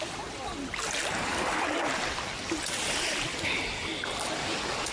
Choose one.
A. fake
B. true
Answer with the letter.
B